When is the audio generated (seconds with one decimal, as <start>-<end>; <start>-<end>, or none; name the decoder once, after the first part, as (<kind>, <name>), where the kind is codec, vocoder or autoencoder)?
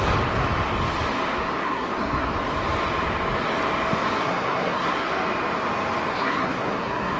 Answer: 1.6-2.3 (codec, SNAC); 4.2-5.1; 6.1-7.2